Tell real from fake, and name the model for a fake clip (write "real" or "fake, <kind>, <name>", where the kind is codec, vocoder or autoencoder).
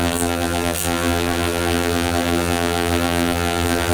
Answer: fake, vocoder, BigVGAN v2